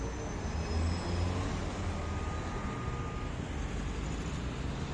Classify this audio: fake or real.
real